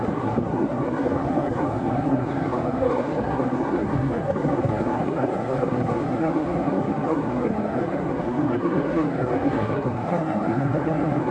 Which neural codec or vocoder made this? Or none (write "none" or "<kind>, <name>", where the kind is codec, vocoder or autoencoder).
codec, SNAC